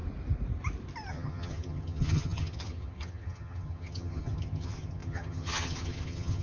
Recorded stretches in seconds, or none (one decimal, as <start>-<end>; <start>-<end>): 0.0-1.1